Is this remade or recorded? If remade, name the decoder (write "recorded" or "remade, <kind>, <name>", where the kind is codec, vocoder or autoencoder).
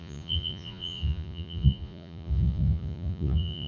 remade, vocoder, Vocos